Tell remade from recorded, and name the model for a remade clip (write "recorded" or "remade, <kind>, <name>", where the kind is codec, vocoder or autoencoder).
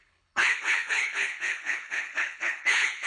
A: remade, codec, HILCodec